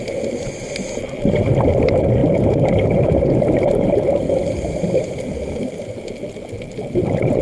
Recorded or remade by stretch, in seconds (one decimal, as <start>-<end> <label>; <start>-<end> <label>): 0.0-2.2 recorded; 2.2-3.1 remade; 3.1-4.4 recorded; 4.4-5.3 remade; 5.3-7.4 recorded